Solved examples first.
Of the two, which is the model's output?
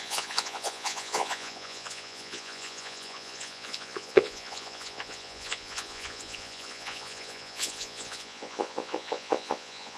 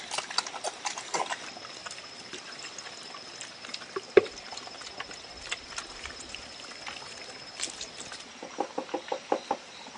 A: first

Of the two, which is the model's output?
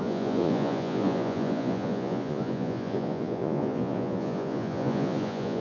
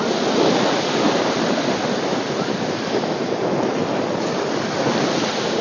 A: first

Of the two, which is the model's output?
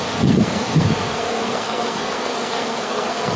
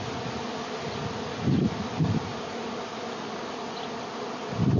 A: first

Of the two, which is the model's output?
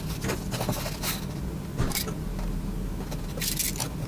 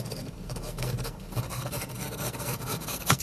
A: second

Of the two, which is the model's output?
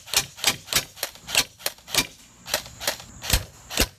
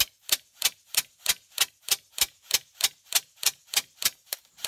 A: second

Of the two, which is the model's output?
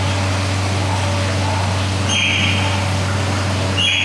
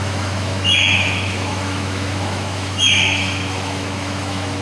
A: second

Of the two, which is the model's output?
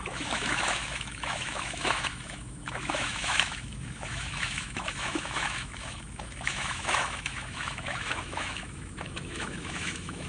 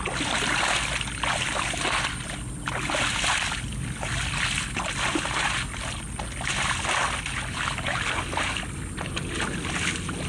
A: first